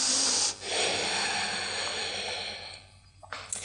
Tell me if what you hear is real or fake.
real